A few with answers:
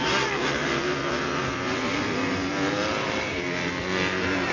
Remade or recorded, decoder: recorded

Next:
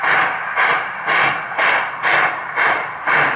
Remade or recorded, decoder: recorded